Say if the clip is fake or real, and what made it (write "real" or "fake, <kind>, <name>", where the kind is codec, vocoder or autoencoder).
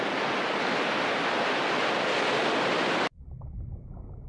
real